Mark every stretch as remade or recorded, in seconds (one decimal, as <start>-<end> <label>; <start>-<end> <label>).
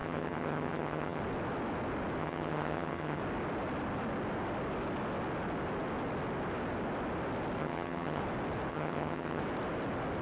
0.0-1.2 remade; 1.2-2.2 recorded; 2.2-3.2 remade; 3.2-7.6 recorded; 7.6-8.2 remade; 8.2-8.7 recorded; 8.7-9.4 remade; 9.4-10.2 recorded